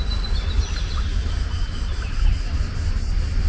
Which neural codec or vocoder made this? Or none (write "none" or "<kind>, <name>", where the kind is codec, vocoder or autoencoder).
none